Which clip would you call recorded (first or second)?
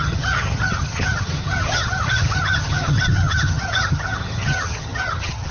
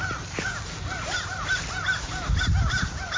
second